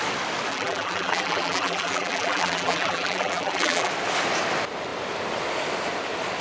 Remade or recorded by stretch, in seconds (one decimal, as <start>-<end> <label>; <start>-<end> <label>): 0.0-0.5 recorded; 0.5-3.9 remade; 3.9-6.4 recorded

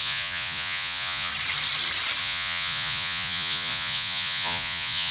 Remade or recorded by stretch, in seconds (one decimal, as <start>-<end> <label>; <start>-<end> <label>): 0.0-1.3 remade; 1.3-2.2 recorded; 2.2-5.1 remade

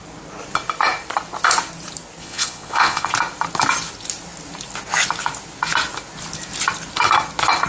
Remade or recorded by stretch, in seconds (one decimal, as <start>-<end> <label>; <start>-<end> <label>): 0.0-2.2 recorded; 2.2-3.1 remade; 3.1-7.7 recorded

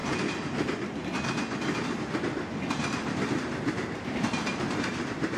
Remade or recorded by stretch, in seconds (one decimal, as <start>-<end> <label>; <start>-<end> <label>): 0.0-5.4 recorded

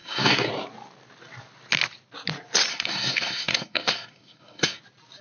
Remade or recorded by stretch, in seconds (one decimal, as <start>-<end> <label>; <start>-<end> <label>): 0.0-0.5 remade; 0.5-2.7 recorded; 2.7-4.8 remade; 4.8-5.2 recorded

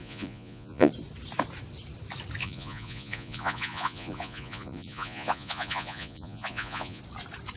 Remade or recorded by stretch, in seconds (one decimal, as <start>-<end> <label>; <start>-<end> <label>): 0.0-0.9 remade; 0.9-2.4 recorded; 2.4-7.0 remade; 7.0-7.6 recorded